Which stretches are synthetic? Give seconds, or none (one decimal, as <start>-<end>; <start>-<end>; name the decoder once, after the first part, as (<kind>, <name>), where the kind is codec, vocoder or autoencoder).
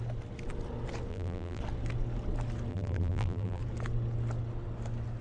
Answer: 1.1-1.6 (vocoder, BigVGAN v2); 2.7-3.6